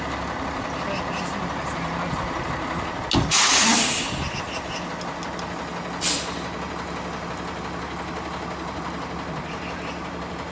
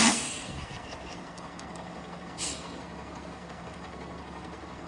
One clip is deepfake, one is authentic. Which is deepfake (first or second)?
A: second